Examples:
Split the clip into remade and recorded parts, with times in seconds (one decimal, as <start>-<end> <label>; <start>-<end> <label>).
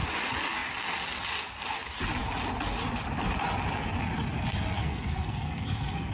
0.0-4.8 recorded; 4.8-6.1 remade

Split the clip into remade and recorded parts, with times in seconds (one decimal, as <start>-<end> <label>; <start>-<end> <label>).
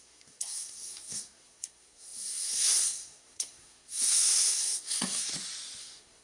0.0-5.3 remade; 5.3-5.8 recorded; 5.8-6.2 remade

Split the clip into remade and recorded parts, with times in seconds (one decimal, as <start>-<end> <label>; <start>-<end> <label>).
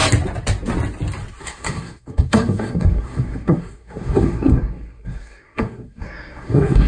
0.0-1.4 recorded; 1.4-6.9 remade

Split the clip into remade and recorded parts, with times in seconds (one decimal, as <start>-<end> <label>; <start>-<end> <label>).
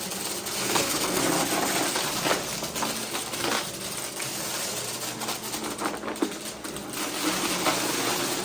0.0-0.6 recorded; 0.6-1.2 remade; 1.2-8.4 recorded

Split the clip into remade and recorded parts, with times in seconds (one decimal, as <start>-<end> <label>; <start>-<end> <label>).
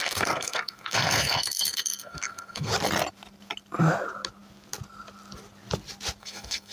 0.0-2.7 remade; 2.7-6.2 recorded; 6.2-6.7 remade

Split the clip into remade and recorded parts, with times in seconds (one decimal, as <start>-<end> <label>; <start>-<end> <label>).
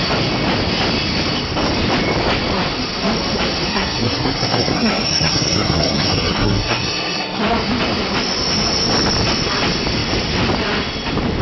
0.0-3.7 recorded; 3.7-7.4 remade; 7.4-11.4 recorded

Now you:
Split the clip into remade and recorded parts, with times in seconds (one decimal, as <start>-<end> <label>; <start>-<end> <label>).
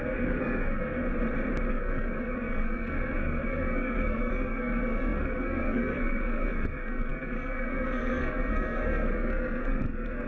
0.0-1.0 remade; 1.0-1.7 recorded; 1.7-10.3 remade